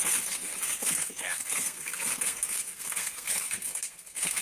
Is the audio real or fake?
fake